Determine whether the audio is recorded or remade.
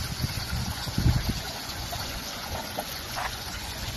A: remade